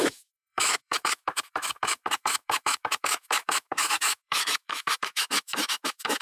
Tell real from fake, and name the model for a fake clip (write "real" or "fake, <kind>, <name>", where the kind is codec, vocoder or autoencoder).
fake, autoencoder, DAC-VAE